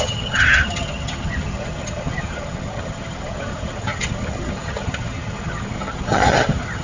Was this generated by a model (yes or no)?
yes